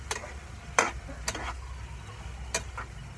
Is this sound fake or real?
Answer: real